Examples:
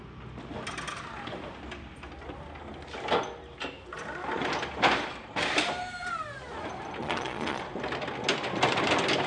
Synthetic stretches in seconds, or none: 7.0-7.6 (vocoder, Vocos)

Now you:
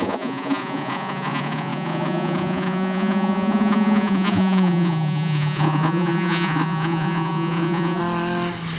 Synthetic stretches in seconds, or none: 0.0-8.0 (vocoder, Vocos)